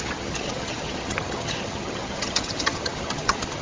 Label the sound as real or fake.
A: fake